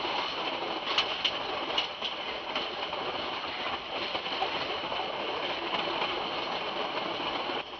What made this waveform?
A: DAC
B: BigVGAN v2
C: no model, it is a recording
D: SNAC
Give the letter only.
C